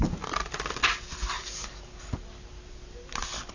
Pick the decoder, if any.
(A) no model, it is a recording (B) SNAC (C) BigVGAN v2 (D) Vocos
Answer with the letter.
A